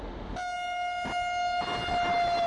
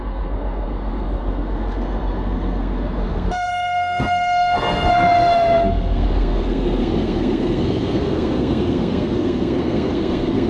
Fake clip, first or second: second